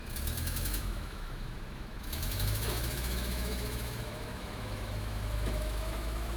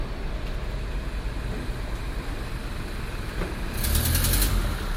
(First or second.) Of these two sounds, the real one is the second